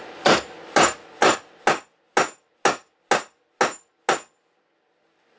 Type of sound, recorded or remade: recorded